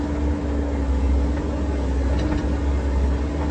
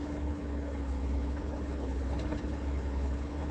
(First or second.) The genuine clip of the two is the first